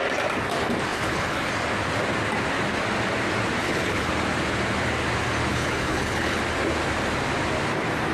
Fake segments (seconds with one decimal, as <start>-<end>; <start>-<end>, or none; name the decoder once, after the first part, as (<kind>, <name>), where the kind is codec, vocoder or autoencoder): 0.9-1.5 (codec, HILCodec); 3.6-4.1; 5.5-6.4